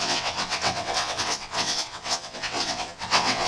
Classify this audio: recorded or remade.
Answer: remade